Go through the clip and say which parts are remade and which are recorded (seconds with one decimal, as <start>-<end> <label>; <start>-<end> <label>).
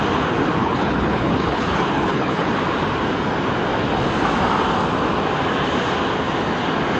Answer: 0.0-0.6 recorded; 0.6-2.5 remade; 2.5-7.0 recorded